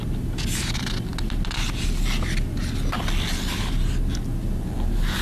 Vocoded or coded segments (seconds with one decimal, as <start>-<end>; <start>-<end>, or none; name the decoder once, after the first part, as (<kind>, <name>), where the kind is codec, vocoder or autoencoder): none